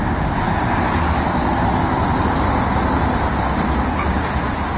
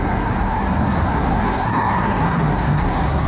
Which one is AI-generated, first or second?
second